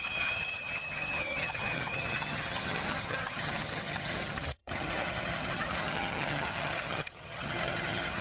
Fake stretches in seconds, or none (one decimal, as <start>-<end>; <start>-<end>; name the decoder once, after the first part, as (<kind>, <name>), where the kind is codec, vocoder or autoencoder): 0.0-8.2 (vocoder, HiFi-GAN)